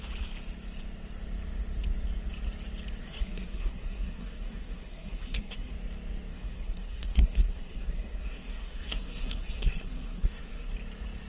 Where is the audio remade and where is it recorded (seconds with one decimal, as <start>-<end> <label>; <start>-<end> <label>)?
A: 0.0-3.0 recorded; 3.0-5.7 remade; 5.7-6.3 recorded; 6.3-10.7 remade; 10.7-11.3 recorded